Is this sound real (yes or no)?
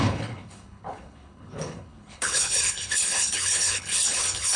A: no